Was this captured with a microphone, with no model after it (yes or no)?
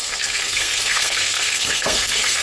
no